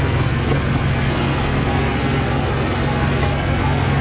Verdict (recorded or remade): remade